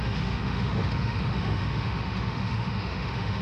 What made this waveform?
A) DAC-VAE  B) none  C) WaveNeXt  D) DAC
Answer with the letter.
A